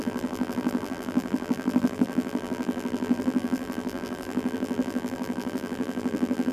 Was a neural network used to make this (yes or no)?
yes